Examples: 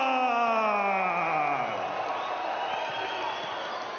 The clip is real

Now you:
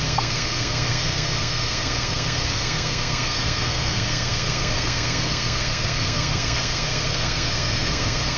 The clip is fake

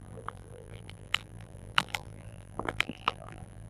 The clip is fake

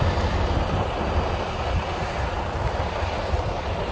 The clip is real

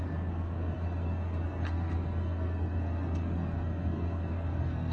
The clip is fake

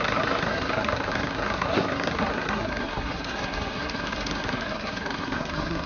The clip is fake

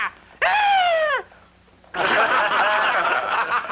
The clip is real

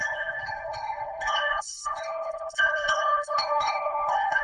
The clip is fake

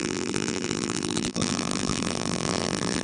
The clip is fake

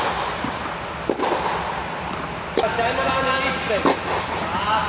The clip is real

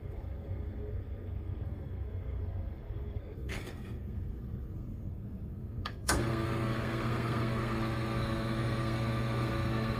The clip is fake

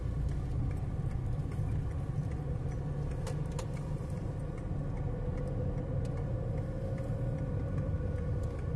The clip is real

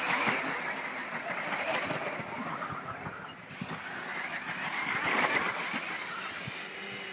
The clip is real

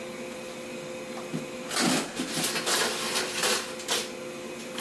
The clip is real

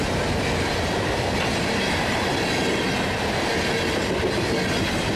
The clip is real